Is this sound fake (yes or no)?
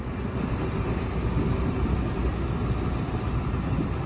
no